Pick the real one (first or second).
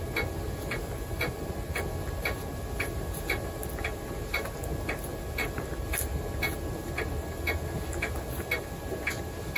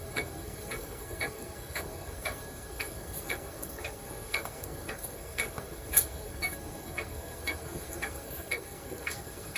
first